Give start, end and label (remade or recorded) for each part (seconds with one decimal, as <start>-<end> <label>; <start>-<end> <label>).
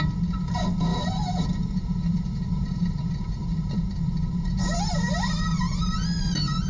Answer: 0.0-0.9 recorded; 0.9-4.9 remade; 4.9-6.7 recorded